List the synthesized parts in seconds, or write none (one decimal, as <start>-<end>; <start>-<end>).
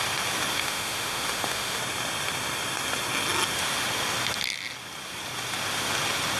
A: 0.5-1.8